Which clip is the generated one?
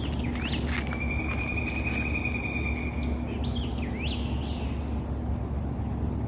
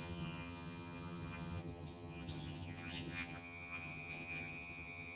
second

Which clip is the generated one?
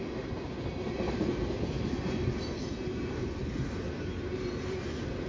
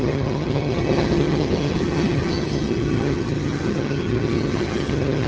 second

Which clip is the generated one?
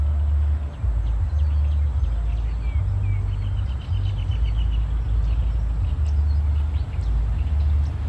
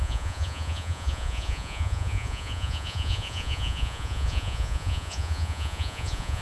second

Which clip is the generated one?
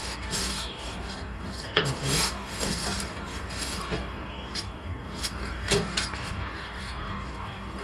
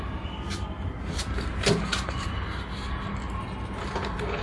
first